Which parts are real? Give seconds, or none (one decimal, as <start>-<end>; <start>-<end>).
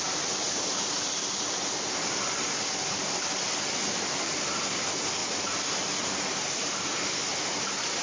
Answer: 1.2-4.3; 5.2-6.0